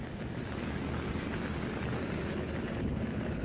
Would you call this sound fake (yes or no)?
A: no